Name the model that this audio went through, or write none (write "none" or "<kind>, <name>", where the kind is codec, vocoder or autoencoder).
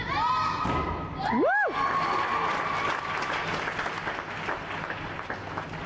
none